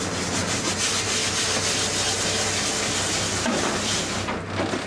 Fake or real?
real